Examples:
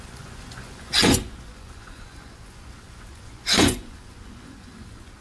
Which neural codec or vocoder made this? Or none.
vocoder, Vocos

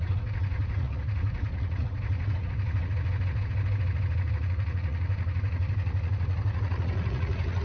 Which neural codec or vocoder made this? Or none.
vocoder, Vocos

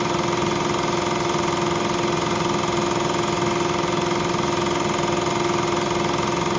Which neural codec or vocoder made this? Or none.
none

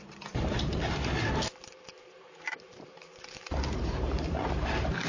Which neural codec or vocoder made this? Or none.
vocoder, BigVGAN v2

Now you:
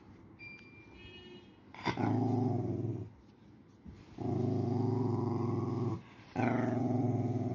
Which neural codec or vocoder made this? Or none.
none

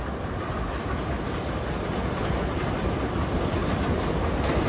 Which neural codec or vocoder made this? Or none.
none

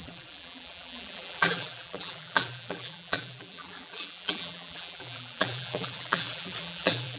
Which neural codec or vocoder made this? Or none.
vocoder, BigVGAN v2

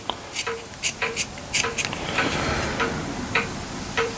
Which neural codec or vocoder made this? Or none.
vocoder, BigVGAN v2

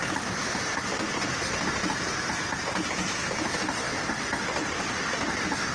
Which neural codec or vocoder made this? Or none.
none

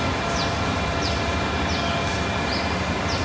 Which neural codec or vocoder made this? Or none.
none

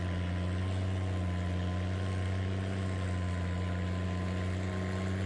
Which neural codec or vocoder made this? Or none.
none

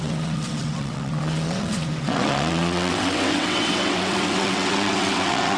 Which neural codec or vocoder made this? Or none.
vocoder, WaveNeXt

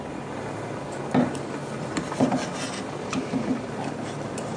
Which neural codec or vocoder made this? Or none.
none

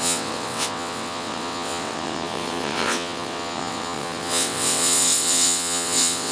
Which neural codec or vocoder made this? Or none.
vocoder, WaveNeXt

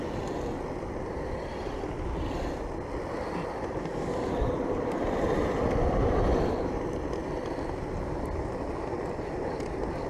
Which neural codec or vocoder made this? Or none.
none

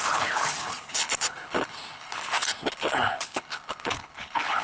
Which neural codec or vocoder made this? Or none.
codec, HILCodec